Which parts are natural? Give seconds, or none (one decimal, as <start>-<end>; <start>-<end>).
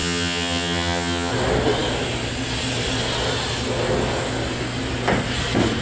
1.3-5.8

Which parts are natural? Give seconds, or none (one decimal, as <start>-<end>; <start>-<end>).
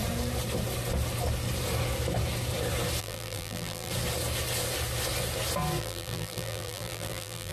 0.0-3.0; 3.9-5.8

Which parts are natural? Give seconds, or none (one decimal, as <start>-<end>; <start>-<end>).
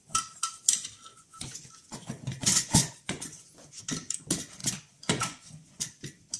0.0-1.1; 3.8-4.6; 5.8-6.4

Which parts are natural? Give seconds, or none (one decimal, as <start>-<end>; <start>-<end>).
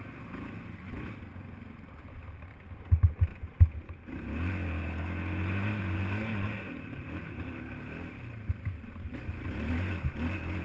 0.0-6.3; 9.0-10.6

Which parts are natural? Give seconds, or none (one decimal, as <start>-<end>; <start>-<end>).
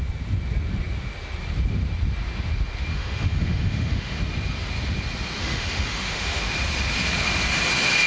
0.0-2.9; 4.2-5.4; 6.4-8.1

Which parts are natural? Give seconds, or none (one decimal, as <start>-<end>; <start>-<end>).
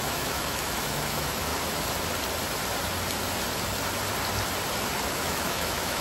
1.5-5.1